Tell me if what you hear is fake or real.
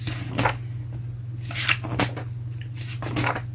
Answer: real